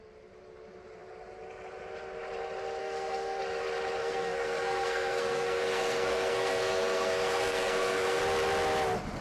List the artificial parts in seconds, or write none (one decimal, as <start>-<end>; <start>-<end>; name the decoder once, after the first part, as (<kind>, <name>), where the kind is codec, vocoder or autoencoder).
2.8-3.4 (codec, SNAC); 4.0-8.2